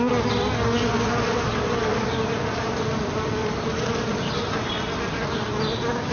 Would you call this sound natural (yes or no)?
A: yes